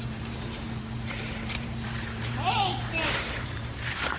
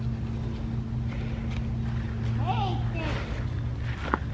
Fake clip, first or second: first